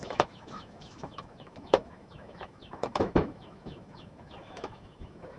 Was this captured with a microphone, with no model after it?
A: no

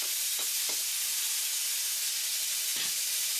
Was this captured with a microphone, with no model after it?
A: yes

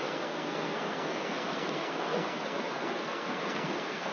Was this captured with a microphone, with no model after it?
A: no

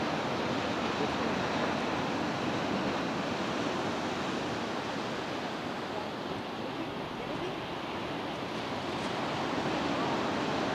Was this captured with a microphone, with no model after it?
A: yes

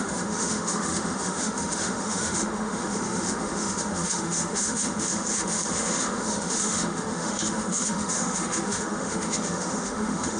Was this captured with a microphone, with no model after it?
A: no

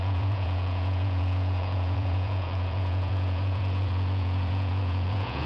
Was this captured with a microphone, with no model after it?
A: no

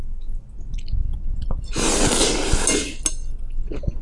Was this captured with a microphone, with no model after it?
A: yes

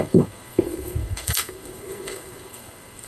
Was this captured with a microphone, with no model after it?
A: no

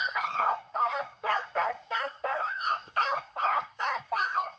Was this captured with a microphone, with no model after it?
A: no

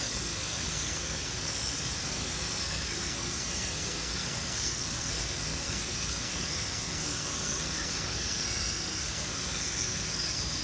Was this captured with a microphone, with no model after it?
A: no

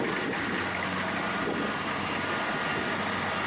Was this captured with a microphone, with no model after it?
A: yes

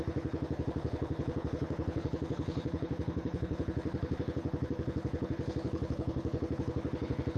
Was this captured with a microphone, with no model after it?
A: no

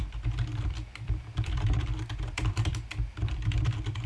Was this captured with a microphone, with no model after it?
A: no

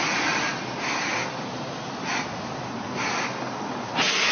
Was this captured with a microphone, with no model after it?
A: yes